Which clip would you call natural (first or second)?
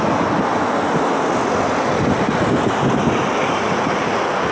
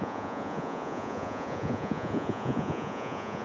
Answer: first